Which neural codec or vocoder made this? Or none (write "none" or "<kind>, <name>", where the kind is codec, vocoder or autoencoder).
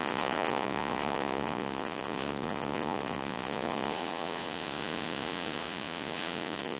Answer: vocoder, Vocos